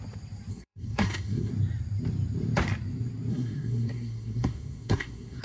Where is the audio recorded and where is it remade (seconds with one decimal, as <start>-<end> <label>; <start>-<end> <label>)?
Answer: 0.0-0.5 recorded; 0.5-1.5 remade; 1.5-3.3 recorded; 3.3-5.4 remade